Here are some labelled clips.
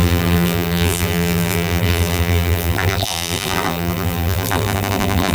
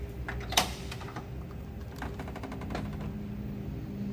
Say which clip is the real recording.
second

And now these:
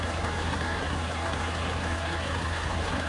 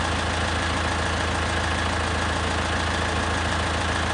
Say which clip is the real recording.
second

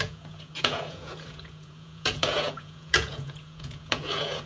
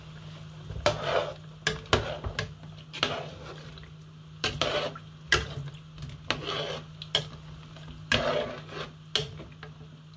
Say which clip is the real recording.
second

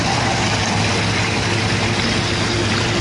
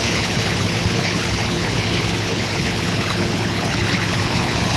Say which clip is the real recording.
first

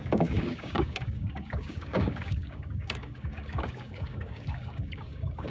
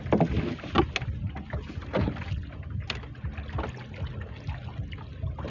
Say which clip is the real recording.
second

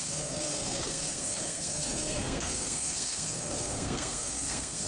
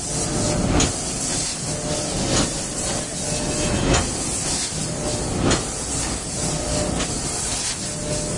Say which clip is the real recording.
second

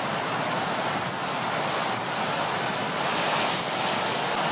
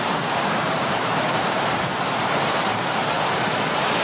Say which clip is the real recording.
first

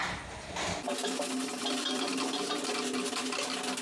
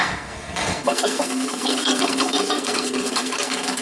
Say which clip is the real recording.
first